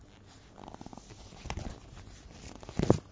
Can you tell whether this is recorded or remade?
recorded